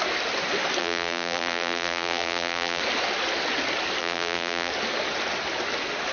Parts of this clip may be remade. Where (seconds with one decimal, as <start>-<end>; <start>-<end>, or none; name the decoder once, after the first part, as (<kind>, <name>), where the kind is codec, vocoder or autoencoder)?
0.8-2.8 (vocoder, BigVGAN v2); 4.0-4.7